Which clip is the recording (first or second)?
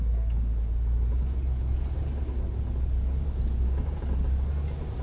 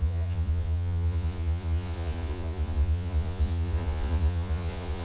first